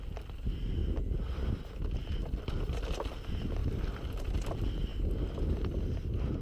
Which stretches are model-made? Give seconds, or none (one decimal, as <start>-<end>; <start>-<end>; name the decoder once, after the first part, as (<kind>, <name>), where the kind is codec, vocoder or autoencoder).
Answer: none